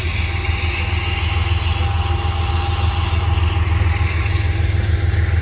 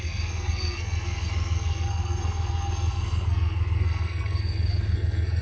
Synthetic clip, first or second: second